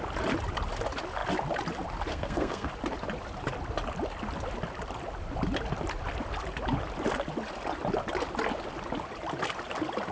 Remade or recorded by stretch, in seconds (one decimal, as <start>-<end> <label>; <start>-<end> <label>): 0.0-2.1 recorded; 2.1-2.7 remade; 2.7-10.1 recorded